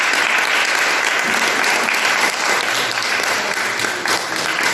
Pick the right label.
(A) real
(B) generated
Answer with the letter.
A